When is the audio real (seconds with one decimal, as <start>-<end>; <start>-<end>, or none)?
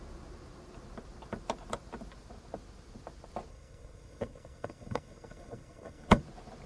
0.0-3.5; 6.2-6.7